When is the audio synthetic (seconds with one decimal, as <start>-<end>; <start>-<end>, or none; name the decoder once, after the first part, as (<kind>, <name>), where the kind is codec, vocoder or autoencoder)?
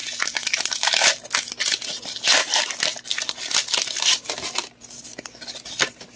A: none